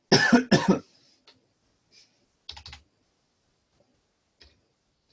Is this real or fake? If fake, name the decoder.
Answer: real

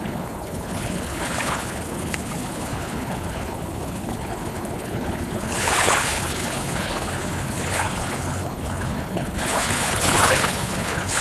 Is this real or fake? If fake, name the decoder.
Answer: fake, codec, HILCodec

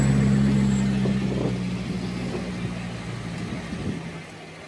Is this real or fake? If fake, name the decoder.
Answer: real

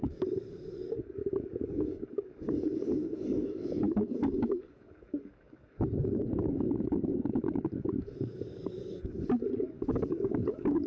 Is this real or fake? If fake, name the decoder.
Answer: fake, codec, DAC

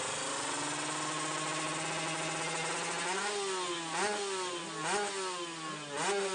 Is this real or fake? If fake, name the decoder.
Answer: real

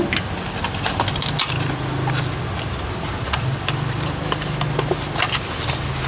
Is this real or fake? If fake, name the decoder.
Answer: real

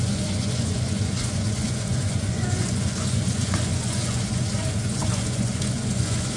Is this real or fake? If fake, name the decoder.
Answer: fake, vocoder, Vocos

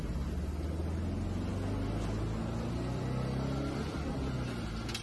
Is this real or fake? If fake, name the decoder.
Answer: real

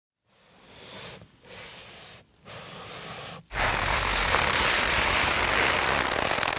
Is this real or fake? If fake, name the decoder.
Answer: real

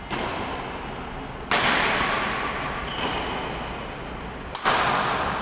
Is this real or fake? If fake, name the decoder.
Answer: real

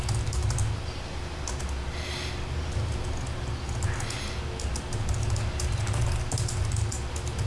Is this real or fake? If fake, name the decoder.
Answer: real